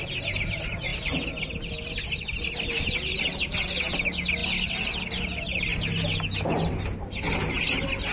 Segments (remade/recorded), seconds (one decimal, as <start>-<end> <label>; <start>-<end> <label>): 0.0-8.1 recorded